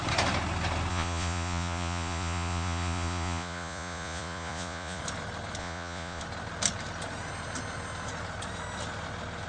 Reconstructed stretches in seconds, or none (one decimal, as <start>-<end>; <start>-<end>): 0.9-5.0; 5.6-6.2